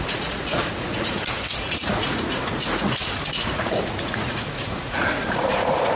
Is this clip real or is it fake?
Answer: fake